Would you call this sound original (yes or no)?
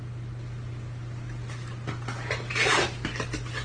yes